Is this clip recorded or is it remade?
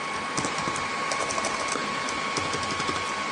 recorded